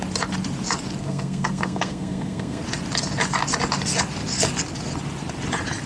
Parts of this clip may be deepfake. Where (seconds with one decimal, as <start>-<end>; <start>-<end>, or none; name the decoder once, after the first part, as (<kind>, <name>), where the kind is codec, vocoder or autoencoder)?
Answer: 1.0-2.6 (codec, SNAC)